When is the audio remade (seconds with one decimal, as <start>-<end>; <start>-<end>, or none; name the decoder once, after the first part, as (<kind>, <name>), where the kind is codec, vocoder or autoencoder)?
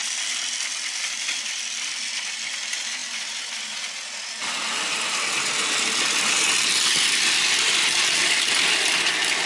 none